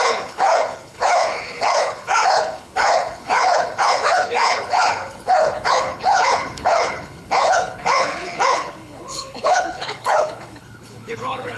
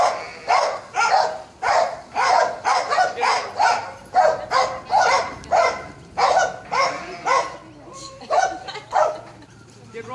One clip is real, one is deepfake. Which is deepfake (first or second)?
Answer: first